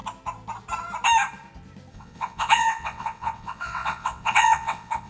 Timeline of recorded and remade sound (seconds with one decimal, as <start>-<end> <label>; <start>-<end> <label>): 0.0-1.9 recorded; 1.9-5.1 remade